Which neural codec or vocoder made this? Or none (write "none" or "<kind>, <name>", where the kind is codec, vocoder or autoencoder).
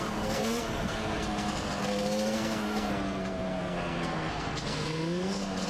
codec, SNAC